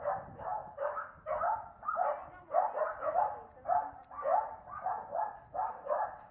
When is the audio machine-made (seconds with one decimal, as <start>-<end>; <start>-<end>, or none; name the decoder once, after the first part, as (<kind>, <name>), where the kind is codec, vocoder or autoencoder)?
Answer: 0.5-1.1 (autoencoder, DAC-VAE)